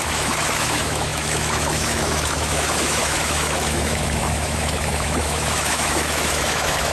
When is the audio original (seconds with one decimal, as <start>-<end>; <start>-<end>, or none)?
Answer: none